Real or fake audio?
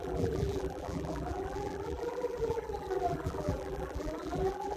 fake